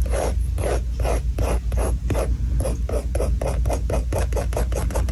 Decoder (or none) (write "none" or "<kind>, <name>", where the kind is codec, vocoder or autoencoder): none